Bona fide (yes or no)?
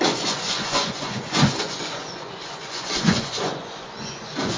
no